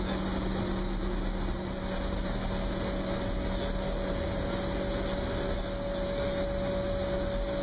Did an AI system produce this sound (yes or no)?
no